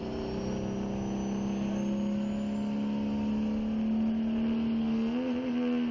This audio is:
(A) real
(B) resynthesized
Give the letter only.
A